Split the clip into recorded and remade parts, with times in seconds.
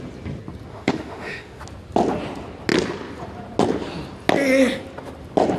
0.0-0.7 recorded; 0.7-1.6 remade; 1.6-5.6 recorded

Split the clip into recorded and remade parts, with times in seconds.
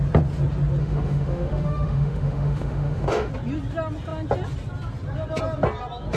0.0-0.8 recorded; 0.8-3.3 remade; 3.3-6.2 recorded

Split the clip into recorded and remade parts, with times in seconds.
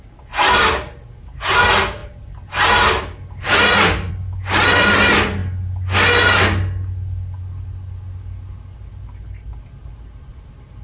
0.0-10.8 recorded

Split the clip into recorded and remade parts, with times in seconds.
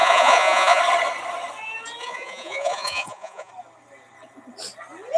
0.0-0.8 remade; 0.8-2.0 recorded; 2.0-3.5 remade; 3.5-5.2 recorded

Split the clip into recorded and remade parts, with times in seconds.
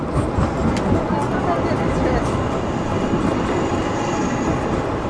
0.0-5.1 recorded